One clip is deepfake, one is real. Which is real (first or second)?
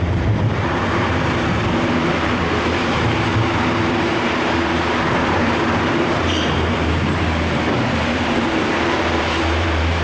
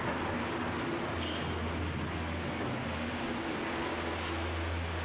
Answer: second